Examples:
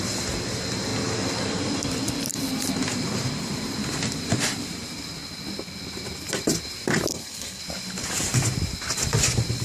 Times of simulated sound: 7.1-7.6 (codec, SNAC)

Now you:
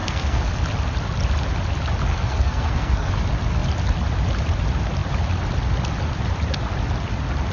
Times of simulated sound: 0.0-0.5 (codec, SNAC); 2.1-3.1

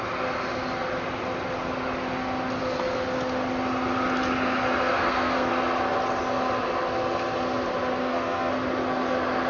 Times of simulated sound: 4.9-5.5 (codec, SNAC); 8.0-8.5

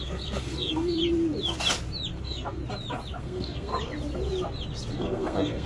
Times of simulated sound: 0.0-1.0 (codec, SNAC); 2.2-2.6; 3.2-3.7; 4.9-5.7

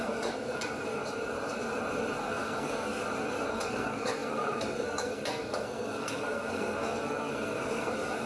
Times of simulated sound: 0.0-1.0 (codec, SNAC); 2.2-3.0; 3.5-8.3

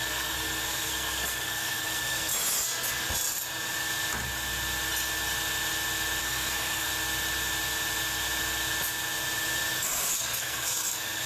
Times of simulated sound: 0.0-2.3 (codec, SNAC); 6.2-6.9; 9.8-11.3